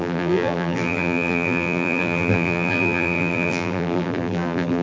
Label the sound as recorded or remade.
remade